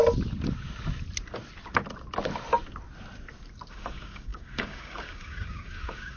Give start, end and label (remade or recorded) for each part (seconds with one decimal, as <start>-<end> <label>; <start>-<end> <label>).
0.0-3.7 recorded; 3.7-6.2 remade